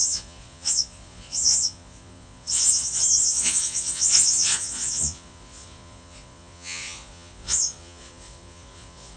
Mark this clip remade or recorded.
remade